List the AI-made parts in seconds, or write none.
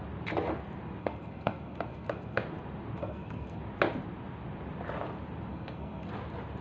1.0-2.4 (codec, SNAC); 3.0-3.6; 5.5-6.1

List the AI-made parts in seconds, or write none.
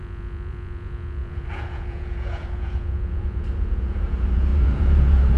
0.0-5.4 (vocoder, Vocos)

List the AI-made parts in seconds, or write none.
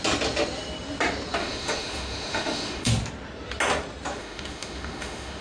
1.4-2.9 (autoencoder, DAC-VAE); 4.2-5.4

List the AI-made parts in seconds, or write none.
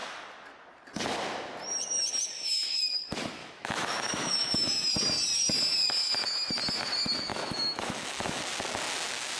3.4-4.9 (autoencoder, DAC-VAE); 7.3-8.4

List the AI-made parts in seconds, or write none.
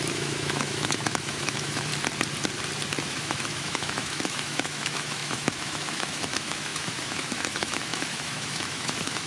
0.0-1.9 (autoencoder, DAC-VAE); 3.1-9.3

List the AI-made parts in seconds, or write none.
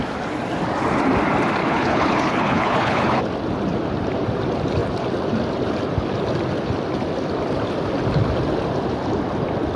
1.6-3.2 (codec, HILCodec)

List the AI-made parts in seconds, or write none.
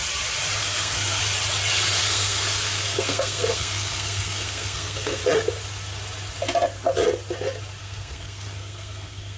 0.6-1.2 (codec, SNAC); 2.0-5.2; 7.8-9.4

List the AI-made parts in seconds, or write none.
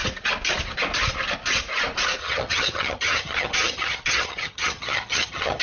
2.2-5.6 (vocoder, HiFi-GAN)